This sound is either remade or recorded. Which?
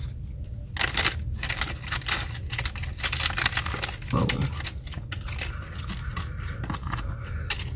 recorded